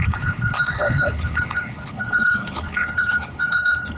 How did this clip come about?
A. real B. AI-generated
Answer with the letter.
B